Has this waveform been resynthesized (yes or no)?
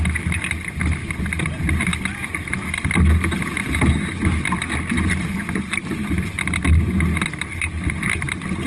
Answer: no